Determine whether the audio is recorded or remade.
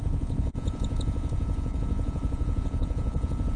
remade